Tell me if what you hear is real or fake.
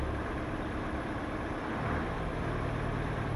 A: fake